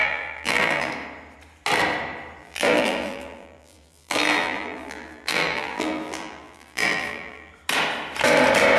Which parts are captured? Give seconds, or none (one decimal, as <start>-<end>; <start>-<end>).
0.9-2.4; 7.5-8.8